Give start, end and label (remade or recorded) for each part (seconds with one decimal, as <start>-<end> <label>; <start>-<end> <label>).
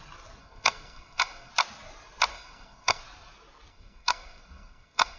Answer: 0.0-0.4 recorded; 0.4-1.5 remade; 1.5-2.3 recorded; 2.3-3.0 remade; 3.0-3.7 recorded; 3.7-5.2 remade